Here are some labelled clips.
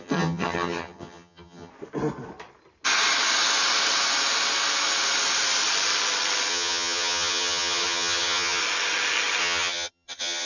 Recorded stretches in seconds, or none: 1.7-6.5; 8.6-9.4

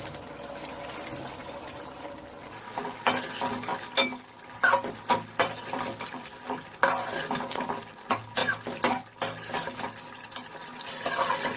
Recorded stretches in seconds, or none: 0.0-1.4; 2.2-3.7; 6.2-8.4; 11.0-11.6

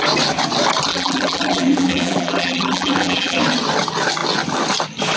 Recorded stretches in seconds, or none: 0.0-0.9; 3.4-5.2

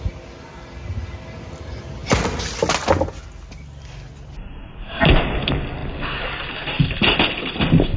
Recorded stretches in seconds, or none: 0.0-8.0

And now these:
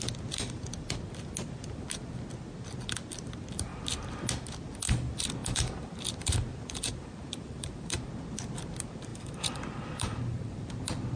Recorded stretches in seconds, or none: 0.0-5.4; 6.0-6.5; 8.1-9.1; 10.7-11.2